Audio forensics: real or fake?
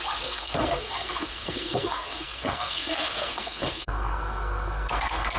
fake